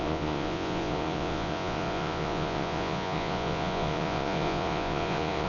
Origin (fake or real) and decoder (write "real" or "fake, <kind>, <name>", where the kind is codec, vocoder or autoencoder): fake, vocoder, Vocos